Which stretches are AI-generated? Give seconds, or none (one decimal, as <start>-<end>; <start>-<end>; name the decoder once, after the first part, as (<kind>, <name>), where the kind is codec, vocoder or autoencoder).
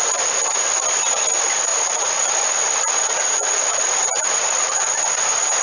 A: 1.7-5.1 (vocoder, Vocos)